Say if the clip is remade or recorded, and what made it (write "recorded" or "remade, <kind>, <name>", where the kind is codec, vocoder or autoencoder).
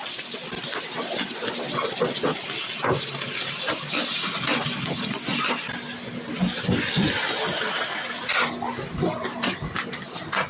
recorded